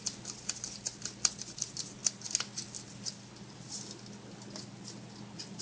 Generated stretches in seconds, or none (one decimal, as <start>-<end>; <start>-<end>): none

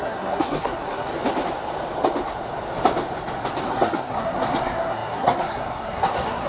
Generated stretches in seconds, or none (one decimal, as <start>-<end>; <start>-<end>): 0.0-1.1; 3.7-6.5